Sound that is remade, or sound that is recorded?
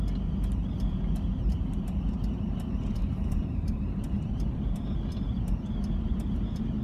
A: remade